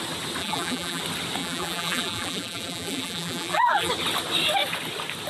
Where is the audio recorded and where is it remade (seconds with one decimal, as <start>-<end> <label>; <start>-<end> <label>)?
0.0-0.4 recorded; 0.4-1.0 remade; 1.0-1.4 recorded; 1.4-3.9 remade; 3.9-5.3 recorded